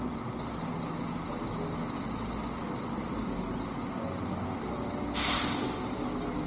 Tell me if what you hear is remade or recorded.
recorded